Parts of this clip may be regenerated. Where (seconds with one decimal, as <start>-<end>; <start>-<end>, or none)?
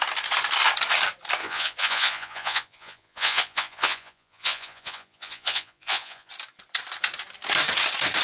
1.4-6.3